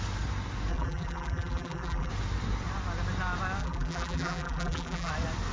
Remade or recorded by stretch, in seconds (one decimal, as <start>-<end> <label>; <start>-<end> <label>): 0.0-0.7 recorded; 0.7-2.1 remade; 2.1-3.6 recorded; 3.6-5.1 remade; 5.1-5.5 recorded